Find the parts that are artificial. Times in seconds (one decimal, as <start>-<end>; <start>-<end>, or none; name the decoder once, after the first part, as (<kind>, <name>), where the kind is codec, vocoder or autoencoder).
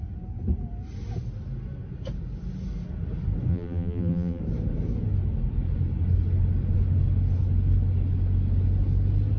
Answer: 3.5-4.4 (vocoder, BigVGAN v2)